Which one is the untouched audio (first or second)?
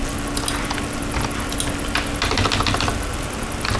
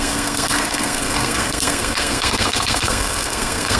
first